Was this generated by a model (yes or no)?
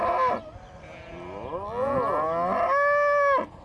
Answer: no